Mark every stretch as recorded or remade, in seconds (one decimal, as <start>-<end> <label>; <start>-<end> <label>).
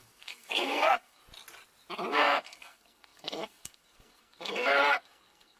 0.0-1.2 remade; 1.2-2.1 recorded; 2.1-5.6 remade